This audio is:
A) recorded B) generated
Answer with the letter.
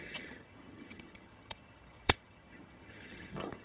B